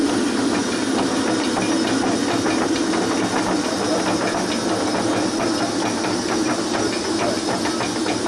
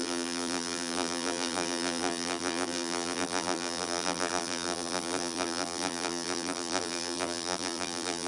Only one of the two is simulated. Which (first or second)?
second